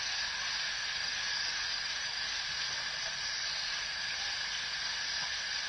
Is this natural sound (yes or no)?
yes